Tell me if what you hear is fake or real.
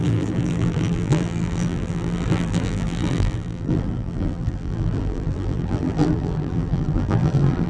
fake